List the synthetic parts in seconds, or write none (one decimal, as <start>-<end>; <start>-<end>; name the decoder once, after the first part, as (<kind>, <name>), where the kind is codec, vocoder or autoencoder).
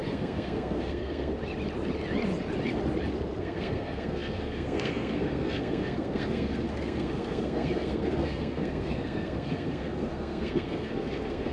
0.0-1.3 (codec, SNAC); 3.4-11.5